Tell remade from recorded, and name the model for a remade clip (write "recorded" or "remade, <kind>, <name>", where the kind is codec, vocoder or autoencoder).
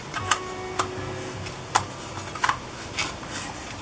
recorded